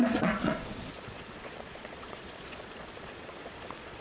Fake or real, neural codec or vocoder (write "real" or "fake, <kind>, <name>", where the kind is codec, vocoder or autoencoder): fake, vocoder, Vocos